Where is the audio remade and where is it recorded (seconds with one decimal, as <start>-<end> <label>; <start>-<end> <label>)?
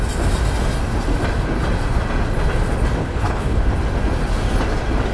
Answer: 0.0-3.0 recorded; 3.0-3.6 remade; 3.6-5.1 recorded